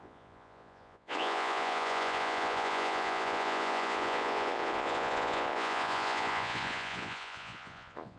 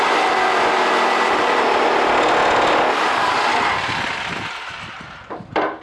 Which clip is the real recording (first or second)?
second